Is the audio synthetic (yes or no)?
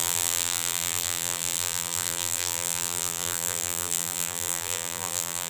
yes